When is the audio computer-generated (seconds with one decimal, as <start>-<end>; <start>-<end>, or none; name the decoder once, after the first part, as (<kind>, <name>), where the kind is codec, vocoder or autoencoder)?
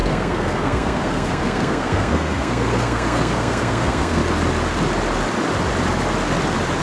0.0-4.2 (codec, SNAC)